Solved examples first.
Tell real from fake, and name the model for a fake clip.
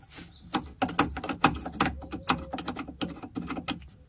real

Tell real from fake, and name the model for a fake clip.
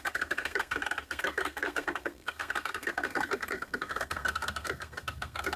fake, codec, SNAC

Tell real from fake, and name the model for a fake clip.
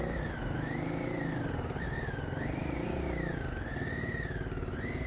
real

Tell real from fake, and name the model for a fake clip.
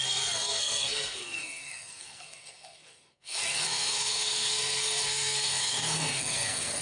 fake, codec, SNAC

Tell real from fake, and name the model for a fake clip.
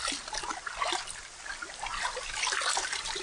real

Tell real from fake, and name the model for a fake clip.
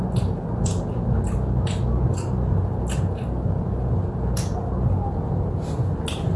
real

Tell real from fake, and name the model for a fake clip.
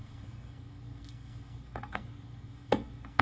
fake, codec, SNAC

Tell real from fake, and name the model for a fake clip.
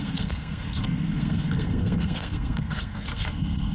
fake, codec, SNAC